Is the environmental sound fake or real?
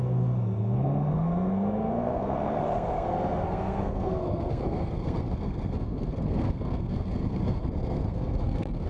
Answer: fake